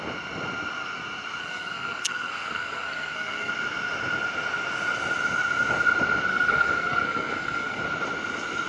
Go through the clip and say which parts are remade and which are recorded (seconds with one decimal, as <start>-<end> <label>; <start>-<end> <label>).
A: 0.0-1.4 recorded; 1.4-3.5 remade; 3.5-6.3 recorded; 6.3-7.8 remade; 7.8-8.7 recorded